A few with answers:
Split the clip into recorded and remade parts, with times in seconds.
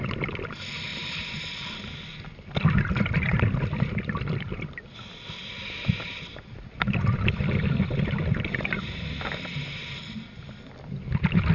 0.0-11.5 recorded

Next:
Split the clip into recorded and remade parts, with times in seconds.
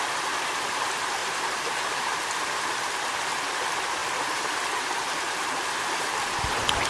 0.0-1.2 recorded; 1.2-2.8 remade; 2.8-4.0 recorded; 4.0-5.9 remade; 5.9-6.9 recorded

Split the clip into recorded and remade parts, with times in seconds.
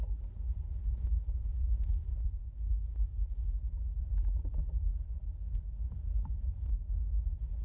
0.0-1.5 recorded; 1.5-2.4 remade; 2.4-7.6 recorded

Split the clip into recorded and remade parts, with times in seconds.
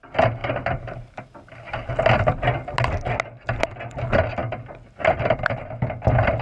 0.0-6.4 recorded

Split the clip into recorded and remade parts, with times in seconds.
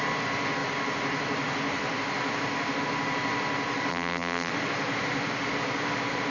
0.0-3.9 recorded; 3.9-4.5 remade; 4.5-6.3 recorded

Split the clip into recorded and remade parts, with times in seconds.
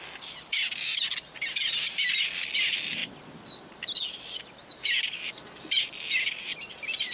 0.0-3.0 recorded; 3.0-5.3 remade; 5.3-7.1 recorded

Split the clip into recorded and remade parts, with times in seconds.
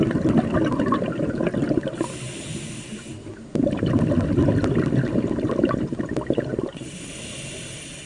0.0-6.5 recorded; 6.5-7.1 remade; 7.1-8.1 recorded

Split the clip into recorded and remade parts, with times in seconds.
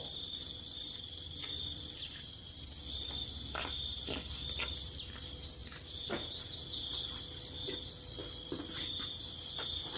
0.0-10.0 recorded